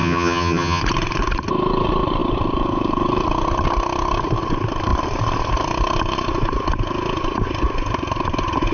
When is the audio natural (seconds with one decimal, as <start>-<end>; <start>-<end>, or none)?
0.8-8.7